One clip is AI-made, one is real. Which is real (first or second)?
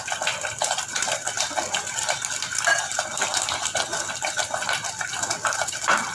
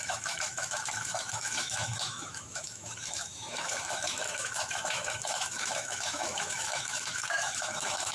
first